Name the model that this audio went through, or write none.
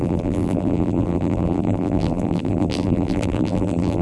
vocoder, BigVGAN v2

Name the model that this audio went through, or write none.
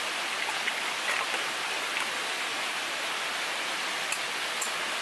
none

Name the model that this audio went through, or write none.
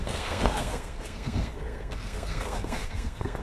codec, SNAC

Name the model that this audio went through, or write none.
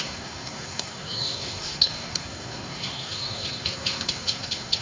codec, SNAC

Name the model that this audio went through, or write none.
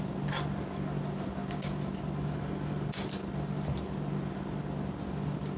none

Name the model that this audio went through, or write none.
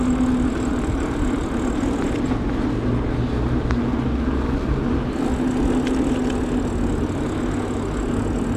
none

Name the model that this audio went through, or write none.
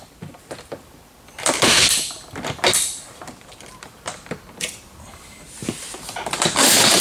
vocoder, BigVGAN v2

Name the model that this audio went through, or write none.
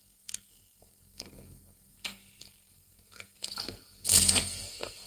codec, SNAC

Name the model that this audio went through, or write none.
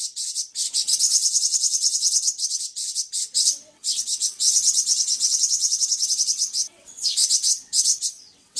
vocoder, WaveNeXt